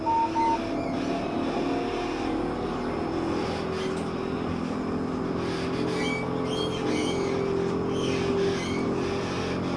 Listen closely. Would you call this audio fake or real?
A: real